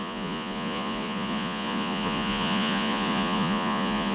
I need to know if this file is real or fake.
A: fake